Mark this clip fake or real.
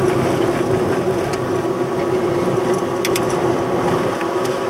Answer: real